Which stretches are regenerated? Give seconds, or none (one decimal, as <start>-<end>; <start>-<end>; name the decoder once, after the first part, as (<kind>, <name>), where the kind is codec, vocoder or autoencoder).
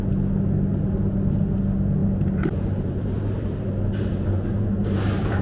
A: 2.0-5.4 (vocoder, BigVGAN v2)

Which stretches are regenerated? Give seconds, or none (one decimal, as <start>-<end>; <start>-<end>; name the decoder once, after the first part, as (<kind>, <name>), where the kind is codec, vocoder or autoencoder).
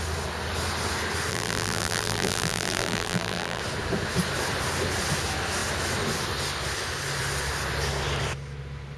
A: 1.3-3.6 (vocoder, BigVGAN v2)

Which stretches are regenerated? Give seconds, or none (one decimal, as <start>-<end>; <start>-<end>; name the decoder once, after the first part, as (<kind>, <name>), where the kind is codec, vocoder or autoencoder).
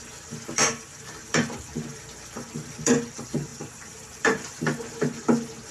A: 0.0-5.7 (vocoder, BigVGAN v2)